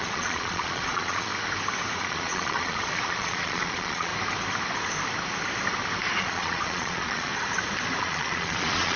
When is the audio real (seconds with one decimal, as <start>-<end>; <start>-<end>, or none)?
1.3-2.0; 4.1-6.2; 7.3-8.0